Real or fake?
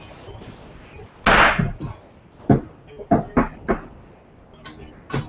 real